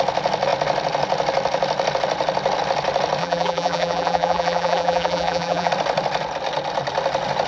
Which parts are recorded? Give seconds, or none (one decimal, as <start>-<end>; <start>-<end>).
0.0-3.2; 5.7-7.5